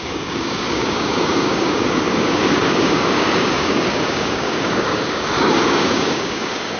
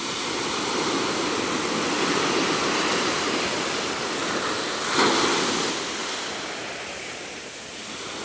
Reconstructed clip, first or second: first